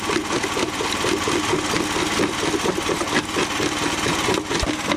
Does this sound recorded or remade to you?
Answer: recorded